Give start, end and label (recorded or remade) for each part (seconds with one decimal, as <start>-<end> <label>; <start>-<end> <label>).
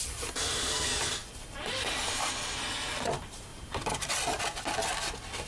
0.0-3.5 recorded; 3.5-4.1 remade; 4.1-5.5 recorded